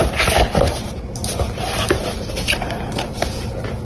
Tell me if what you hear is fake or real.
real